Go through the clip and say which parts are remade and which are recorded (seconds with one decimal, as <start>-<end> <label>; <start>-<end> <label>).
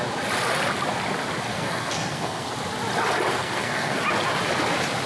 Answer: 0.0-1.5 recorded; 1.5-2.5 remade; 2.5-3.3 recorded; 3.3-4.0 remade; 4.0-5.1 recorded